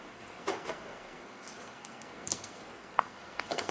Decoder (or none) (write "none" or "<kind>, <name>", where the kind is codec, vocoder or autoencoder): codec, SNAC